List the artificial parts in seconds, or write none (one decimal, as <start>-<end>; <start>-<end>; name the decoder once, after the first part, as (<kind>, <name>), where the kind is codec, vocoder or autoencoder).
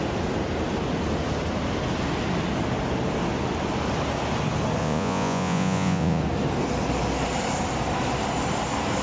4.8-6.2 (vocoder, Vocos)